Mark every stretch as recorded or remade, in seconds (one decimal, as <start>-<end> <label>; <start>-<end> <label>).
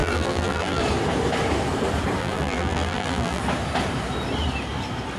0.0-0.8 remade; 0.8-2.2 recorded; 2.2-3.4 remade; 3.4-5.2 recorded